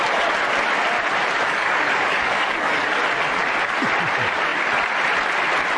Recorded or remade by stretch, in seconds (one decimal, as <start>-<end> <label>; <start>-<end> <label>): 0.0-1.4 recorded; 1.4-2.9 remade; 2.9-5.8 recorded